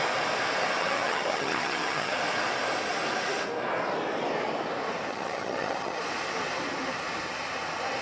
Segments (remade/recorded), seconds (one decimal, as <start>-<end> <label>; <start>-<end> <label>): 0.0-0.8 recorded; 0.8-2.2 remade; 2.2-5.1 recorded; 5.1-6.0 remade; 6.0-8.0 recorded